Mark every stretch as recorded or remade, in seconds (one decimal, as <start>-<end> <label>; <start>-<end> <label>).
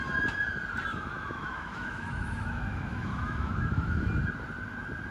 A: 0.0-0.9 recorded; 0.9-4.0 remade; 4.0-5.1 recorded